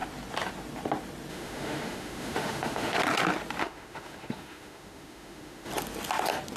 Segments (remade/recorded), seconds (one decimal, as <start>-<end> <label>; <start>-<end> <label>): 0.0-1.3 recorded; 1.3-3.0 remade; 3.0-3.6 recorded; 3.6-5.7 remade; 5.7-6.6 recorded